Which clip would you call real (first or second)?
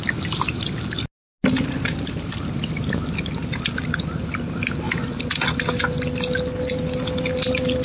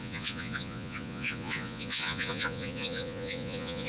first